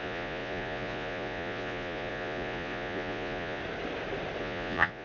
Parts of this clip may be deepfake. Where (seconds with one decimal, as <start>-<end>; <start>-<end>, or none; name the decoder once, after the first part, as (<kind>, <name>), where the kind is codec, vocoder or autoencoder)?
0.0-3.6 (vocoder, Vocos); 4.4-5.0